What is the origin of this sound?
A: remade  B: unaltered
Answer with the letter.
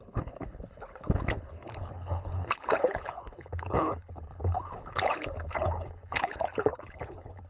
A